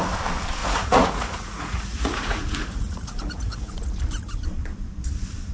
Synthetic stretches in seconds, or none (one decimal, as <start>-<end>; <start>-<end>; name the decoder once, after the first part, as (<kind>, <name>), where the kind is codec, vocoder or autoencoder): 0.6-3.9 (vocoder, Vocos)